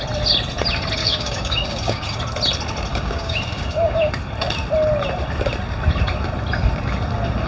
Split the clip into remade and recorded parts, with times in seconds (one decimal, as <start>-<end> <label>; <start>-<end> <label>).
0.0-1.0 recorded; 1.0-2.2 remade; 2.2-2.9 recorded; 2.9-4.1 remade; 4.1-7.5 recorded